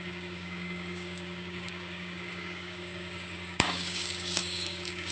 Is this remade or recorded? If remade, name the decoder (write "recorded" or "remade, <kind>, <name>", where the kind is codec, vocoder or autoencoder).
remade, codec, DAC